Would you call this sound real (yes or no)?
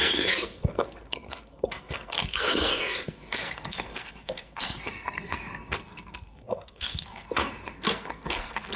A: no